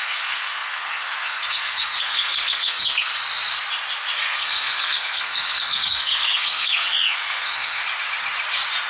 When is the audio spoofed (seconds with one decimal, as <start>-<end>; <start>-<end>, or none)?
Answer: 0.0-3.1; 4.2-7.8